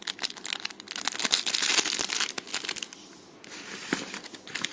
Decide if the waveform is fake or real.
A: real